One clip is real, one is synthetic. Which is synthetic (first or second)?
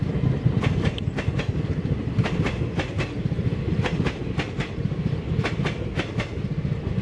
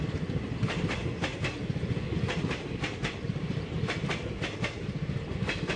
second